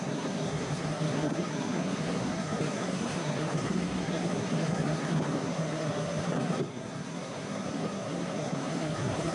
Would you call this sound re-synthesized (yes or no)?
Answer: yes